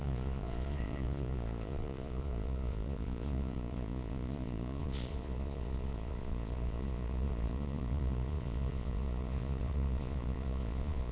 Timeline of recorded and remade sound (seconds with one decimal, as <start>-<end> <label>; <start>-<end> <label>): 0.0-11.1 remade